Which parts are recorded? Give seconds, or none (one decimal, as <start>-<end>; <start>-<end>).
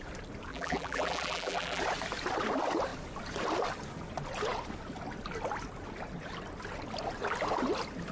0.0-0.5; 1.8-8.1